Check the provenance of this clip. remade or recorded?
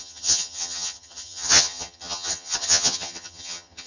remade